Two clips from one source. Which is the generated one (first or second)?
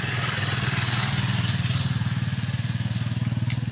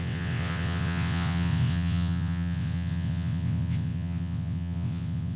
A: second